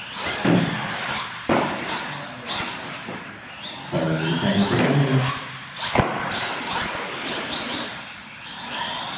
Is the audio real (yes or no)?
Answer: yes